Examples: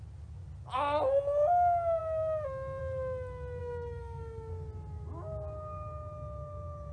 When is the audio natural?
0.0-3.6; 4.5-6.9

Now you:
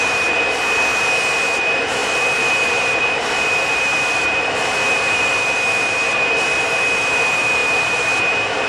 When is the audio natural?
none

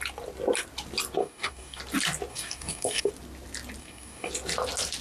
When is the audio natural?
0.0-1.2; 1.8-2.3; 3.1-3.8; 4.3-5.0

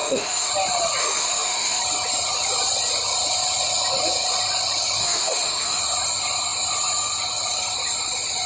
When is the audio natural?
0.5-1.0; 1.8-5.0; 5.8-8.5

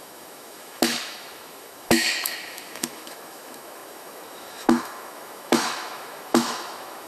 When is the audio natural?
none

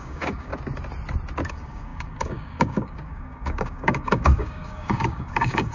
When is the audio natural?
0.5-1.5

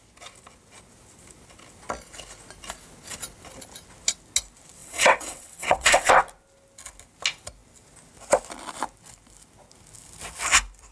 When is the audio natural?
0.0-4.8; 6.2-10.9